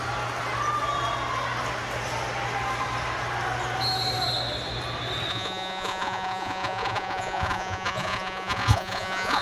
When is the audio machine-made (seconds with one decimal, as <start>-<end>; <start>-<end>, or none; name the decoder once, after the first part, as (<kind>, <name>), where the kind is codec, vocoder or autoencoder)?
5.3-9.4 (vocoder, Vocos)